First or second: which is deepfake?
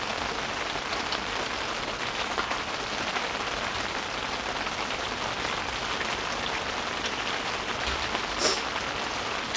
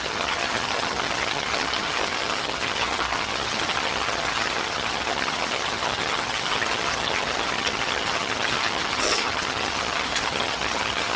second